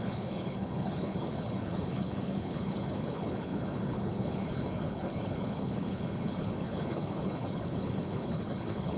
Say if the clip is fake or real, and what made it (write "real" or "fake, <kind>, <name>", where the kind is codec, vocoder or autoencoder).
fake, codec, HILCodec